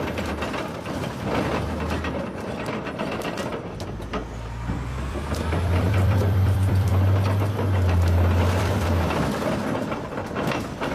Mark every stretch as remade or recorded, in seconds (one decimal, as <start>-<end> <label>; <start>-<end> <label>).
0.0-4.2 remade; 4.2-5.1 recorded; 5.1-6.9 remade; 6.9-8.4 recorded; 8.4-10.9 remade

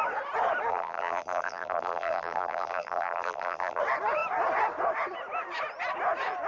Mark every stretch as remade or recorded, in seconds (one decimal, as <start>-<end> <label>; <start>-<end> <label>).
0.0-0.7 recorded; 0.7-3.8 remade; 3.8-6.5 recorded

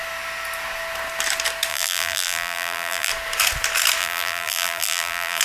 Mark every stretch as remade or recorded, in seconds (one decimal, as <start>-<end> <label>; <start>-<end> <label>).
0.0-1.7 recorded; 1.7-3.1 remade; 3.1-4.0 recorded; 4.0-5.4 remade

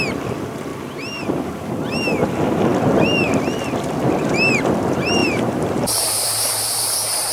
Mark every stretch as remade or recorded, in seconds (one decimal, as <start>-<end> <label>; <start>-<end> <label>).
0.0-0.7 recorded; 0.7-1.7 remade; 1.7-5.2 recorded; 5.2-7.3 remade

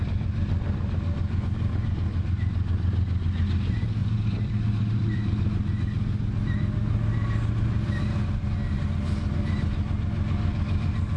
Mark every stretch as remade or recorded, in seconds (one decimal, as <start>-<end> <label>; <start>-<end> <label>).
0.0-4.0 recorded; 4.0-5.2 remade; 5.2-11.2 recorded

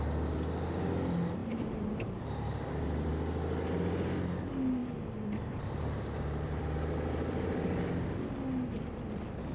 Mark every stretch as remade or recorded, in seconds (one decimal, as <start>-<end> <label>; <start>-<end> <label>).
0.0-1.4 recorded; 1.4-3.1 remade; 3.1-4.8 recorded; 4.8-7.9 remade; 7.9-9.5 recorded

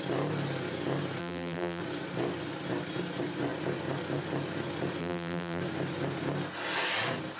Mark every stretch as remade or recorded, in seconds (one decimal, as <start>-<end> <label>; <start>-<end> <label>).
0.0-1.2 recorded; 1.2-1.8 remade; 1.8-5.0 recorded; 5.0-5.6 remade; 5.6-7.4 recorded